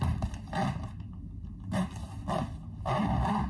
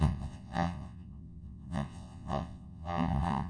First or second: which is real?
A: first